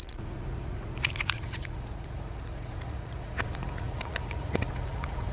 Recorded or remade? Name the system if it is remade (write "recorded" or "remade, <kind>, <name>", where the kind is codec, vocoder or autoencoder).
remade, vocoder, Vocos